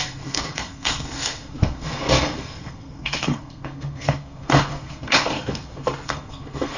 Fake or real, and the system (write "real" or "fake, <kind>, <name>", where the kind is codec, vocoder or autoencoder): fake, codec, SNAC